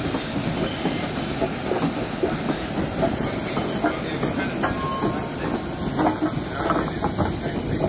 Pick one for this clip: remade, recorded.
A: recorded